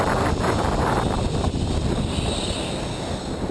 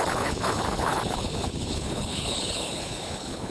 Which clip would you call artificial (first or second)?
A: second